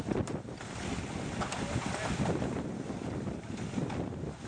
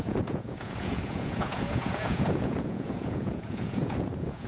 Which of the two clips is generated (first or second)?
second